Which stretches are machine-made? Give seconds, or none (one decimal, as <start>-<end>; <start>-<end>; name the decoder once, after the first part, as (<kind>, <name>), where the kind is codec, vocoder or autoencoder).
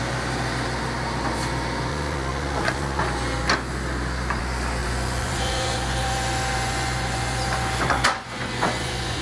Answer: 1.9-3.0 (vocoder, Vocos); 4.8-9.2